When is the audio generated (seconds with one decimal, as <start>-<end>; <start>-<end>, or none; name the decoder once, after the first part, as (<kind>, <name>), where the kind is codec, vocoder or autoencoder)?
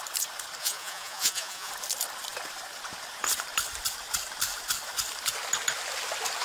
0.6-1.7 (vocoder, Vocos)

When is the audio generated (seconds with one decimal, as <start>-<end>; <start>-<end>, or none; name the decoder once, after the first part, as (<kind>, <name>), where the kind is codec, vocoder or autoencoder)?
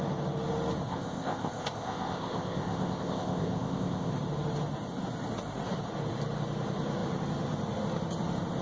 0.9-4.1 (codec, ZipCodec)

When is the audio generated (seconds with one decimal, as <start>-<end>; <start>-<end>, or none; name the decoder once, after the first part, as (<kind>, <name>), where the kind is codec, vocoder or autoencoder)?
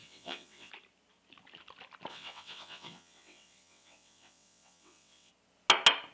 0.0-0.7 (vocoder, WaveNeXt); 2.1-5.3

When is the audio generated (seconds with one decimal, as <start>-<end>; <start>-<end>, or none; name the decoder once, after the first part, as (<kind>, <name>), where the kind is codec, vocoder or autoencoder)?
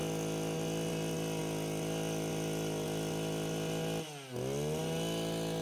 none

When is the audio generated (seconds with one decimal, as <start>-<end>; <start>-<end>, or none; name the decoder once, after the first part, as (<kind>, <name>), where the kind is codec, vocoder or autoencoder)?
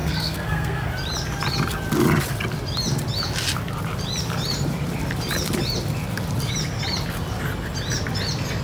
0.0-0.9 (codec, SNAC)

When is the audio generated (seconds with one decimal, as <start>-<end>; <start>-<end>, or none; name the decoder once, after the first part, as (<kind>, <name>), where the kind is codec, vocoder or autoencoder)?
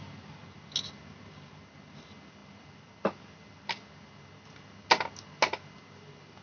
none